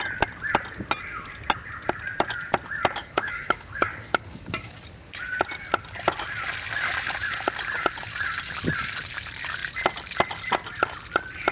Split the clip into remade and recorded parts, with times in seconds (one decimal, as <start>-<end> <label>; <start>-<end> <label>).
0.0-3.0 recorded; 3.0-5.1 remade; 5.1-11.5 recorded

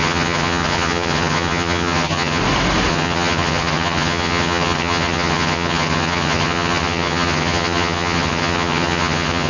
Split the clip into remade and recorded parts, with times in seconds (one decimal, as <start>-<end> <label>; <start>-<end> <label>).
0.0-2.4 remade; 2.4-2.9 recorded; 2.9-9.5 remade

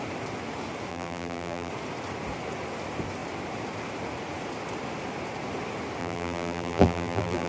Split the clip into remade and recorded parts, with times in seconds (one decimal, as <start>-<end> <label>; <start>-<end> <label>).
0.0-0.9 recorded; 0.9-1.7 remade; 1.7-6.0 recorded; 6.0-7.5 remade

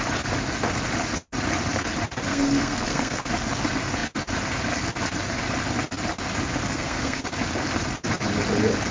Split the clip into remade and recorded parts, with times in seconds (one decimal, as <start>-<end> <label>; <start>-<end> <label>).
0.0-2.3 recorded; 2.3-3.3 remade; 3.3-6.6 recorded; 6.6-7.2 remade; 7.2-8.9 recorded

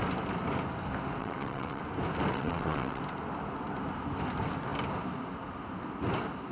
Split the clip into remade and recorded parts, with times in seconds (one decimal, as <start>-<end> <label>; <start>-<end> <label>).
0.0-1.2 recorded; 1.2-1.8 remade; 1.8-2.3 recorded; 2.3-3.0 remade; 3.0-6.5 recorded